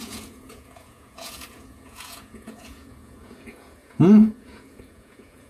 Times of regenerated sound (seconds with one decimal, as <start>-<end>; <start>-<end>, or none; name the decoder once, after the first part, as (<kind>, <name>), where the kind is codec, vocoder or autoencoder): 0.0-5.5 (vocoder, Vocos)